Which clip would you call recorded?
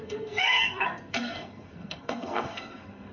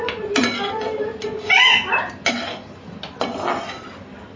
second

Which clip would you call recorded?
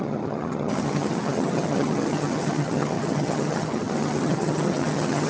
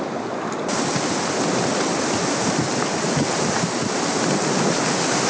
second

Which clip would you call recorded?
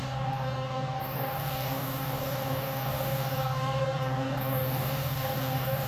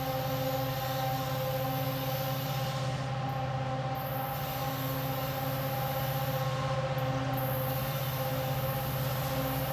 second